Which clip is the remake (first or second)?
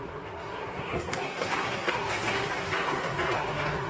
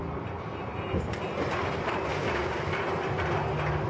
first